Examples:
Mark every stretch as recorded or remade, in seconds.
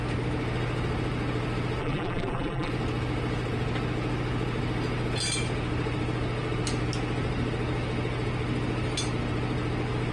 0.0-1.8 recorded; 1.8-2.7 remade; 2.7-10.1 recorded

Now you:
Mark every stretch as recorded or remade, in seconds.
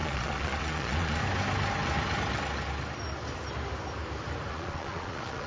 0.0-1.2 remade; 1.2-4.5 recorded; 4.5-5.5 remade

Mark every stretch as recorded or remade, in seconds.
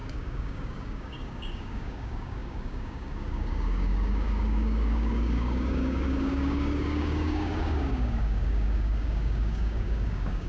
0.0-10.5 remade